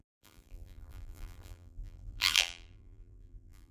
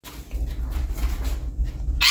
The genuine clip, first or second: second